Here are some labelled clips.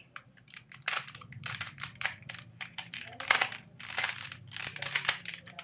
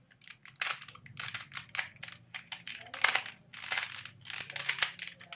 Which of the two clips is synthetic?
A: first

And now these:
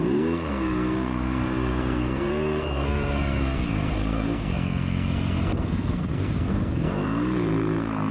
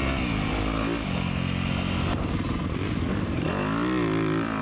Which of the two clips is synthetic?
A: first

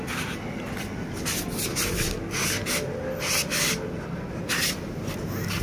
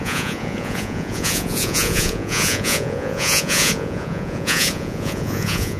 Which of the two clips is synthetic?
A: second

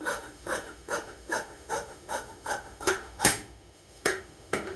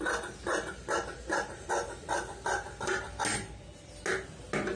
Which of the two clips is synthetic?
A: first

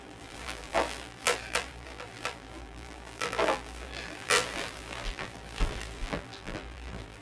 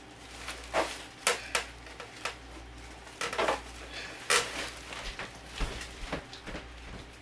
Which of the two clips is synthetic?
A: first